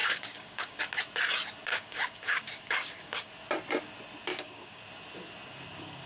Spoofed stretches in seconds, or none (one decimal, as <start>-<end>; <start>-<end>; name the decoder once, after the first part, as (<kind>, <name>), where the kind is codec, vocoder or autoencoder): 0.0-0.8 (codec, DAC); 1.7-3.3; 4.3-4.8